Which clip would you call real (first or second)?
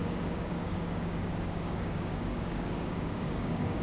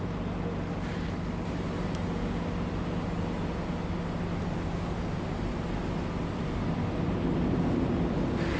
second